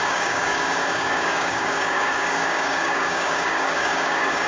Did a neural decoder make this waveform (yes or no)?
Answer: yes